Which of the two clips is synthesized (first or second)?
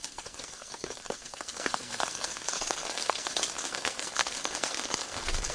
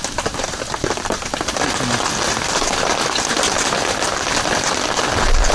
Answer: first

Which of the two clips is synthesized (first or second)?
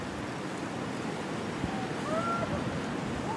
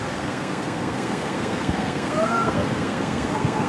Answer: second